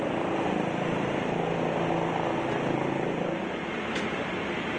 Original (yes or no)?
yes